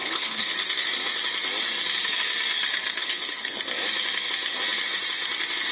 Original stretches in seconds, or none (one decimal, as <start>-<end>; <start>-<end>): 0.5-3.0; 3.6-5.7